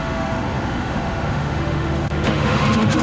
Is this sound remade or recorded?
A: remade